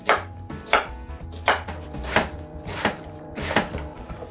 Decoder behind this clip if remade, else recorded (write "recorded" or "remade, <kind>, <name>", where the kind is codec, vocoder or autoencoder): remade, vocoder, BigVGAN v2